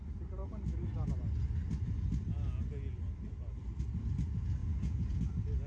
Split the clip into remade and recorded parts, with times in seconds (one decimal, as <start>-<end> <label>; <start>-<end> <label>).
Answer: 0.0-4.6 recorded; 4.6-5.2 remade; 5.2-5.7 recorded